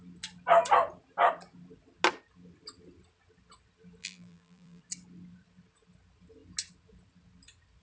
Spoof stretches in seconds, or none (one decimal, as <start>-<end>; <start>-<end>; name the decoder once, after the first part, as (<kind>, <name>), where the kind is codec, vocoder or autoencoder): 4.0-4.8 (vocoder, BigVGAN v2)